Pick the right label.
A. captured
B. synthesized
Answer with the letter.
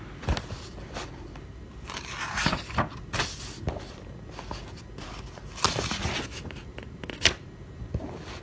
A